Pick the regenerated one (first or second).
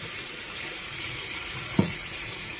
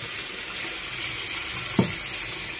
first